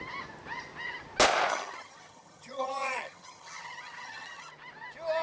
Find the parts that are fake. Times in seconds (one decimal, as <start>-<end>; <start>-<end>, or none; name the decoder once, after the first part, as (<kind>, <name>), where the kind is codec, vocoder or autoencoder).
1.5-4.5 (vocoder, HiFi-GAN)